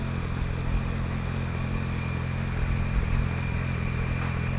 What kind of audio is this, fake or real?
real